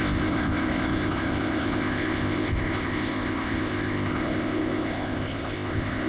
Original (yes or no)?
no